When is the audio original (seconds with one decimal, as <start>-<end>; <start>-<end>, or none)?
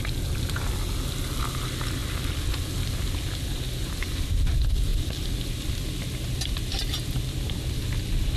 0.0-8.4